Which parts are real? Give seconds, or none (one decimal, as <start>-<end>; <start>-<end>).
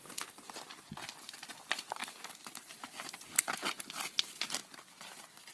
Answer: 0.0-2.0; 2.6-5.5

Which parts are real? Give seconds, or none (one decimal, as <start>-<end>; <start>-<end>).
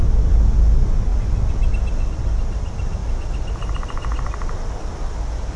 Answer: 0.0-5.6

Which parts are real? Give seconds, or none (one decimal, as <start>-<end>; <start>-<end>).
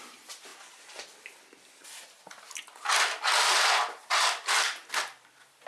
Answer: 0.5-3.4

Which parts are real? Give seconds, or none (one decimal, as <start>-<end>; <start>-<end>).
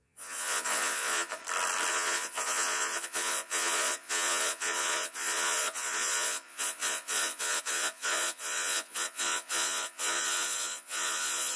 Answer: 1.4-1.9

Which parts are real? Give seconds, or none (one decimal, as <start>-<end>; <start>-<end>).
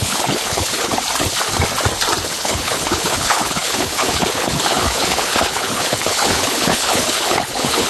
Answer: 0.9-2.2